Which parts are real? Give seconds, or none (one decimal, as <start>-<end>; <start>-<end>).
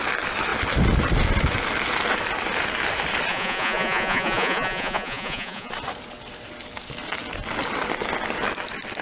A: 0.0-3.3; 5.7-9.0